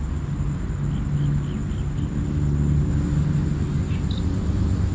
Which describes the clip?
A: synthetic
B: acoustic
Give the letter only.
B